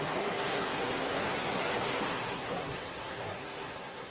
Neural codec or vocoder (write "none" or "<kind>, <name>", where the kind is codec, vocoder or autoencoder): codec, SNAC